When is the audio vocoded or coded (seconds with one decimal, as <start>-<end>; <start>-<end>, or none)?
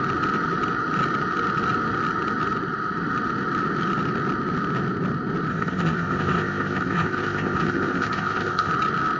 5.5-8.7